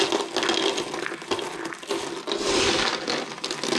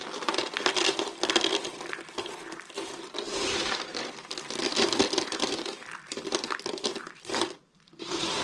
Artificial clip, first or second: second